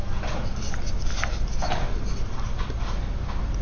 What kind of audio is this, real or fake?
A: real